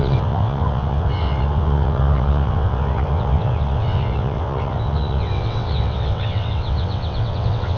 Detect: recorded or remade remade